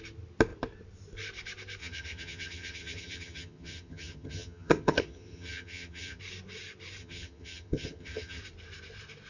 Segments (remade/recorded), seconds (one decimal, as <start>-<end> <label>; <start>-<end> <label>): 0.0-1.8 recorded; 1.8-6.2 remade; 6.2-7.0 recorded; 7.0-8.4 remade; 8.4-9.3 recorded